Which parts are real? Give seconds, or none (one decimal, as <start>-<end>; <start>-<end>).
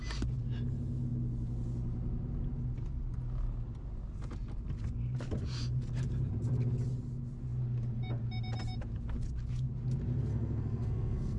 0.0-10.3